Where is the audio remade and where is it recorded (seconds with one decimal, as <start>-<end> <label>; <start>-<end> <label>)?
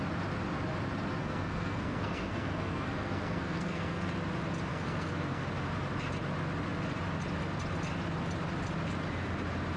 0.0-1.2 recorded; 1.2-4.1 remade; 4.1-4.7 recorded; 4.7-5.5 remade; 5.5-9.8 recorded